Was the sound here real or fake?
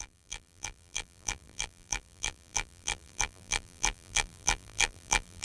fake